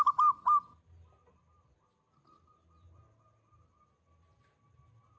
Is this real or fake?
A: real